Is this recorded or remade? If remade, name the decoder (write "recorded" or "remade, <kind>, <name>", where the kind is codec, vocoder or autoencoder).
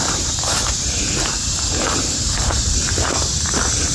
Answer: remade, vocoder, BigVGAN v2